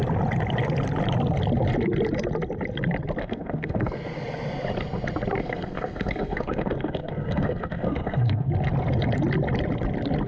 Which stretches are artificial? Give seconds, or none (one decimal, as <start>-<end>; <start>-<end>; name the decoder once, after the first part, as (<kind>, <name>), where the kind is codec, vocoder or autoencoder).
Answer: 3.2-3.9 (codec, SNAC); 5.4-8.5